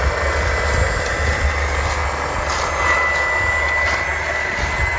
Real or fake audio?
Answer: real